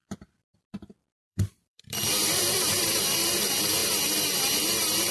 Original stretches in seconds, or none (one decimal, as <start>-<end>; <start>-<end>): 3.1-5.1